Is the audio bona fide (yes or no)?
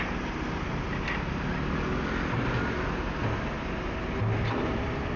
yes